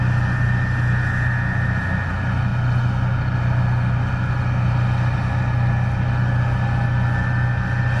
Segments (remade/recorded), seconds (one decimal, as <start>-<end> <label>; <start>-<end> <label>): 0.0-8.0 recorded